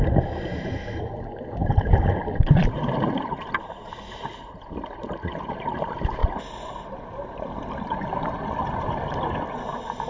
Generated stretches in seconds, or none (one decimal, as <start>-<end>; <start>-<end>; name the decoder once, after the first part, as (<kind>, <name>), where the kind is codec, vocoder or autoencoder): 1.6-3.5 (vocoder, BigVGAN v2)